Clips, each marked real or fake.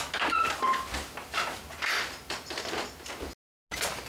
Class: real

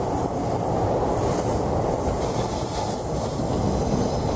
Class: real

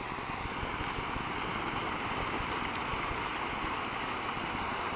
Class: real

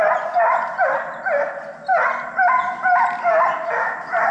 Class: real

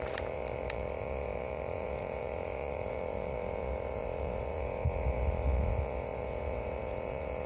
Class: fake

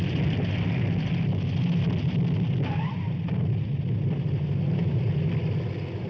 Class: real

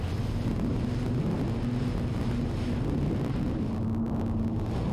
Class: real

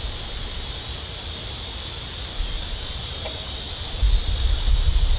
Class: real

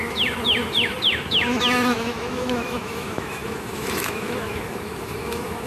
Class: fake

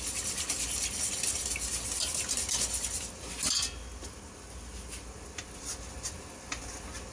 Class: real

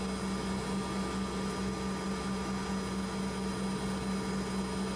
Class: real